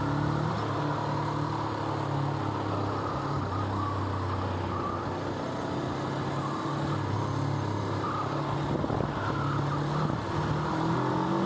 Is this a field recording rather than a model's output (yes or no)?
yes